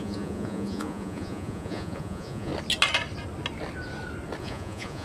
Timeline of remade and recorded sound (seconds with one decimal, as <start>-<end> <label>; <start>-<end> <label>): 0.0-2.5 remade; 2.5-4.4 recorded; 4.4-5.0 remade